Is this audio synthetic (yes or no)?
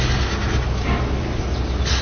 no